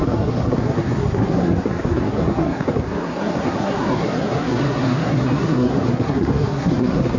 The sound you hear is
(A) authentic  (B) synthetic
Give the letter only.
B